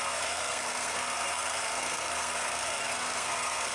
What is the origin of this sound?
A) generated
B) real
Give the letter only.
A